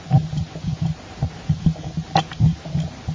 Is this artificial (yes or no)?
no